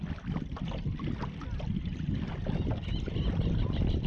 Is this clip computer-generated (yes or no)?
no